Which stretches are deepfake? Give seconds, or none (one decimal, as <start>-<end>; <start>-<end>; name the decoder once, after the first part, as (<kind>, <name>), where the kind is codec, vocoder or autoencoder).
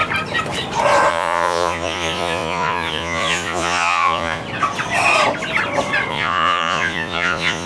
1.1-4.4 (vocoder, Vocos); 6.1-7.7